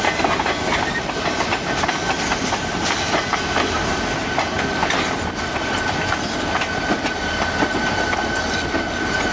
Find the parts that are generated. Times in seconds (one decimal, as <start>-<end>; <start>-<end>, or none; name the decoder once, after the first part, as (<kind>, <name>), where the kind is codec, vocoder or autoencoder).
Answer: none